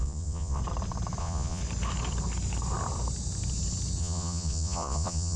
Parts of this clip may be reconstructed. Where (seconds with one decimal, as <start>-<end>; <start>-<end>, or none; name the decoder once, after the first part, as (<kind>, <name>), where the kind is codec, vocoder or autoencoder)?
0.0-0.6 (vocoder, Vocos); 1.2-1.6; 4.0-5.4